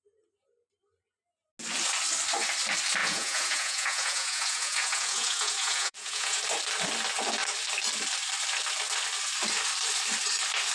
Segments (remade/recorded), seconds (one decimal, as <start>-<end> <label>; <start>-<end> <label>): 0.0-3.0 recorded; 3.0-6.4 remade; 6.4-10.7 recorded